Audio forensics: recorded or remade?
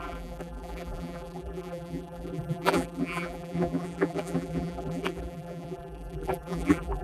remade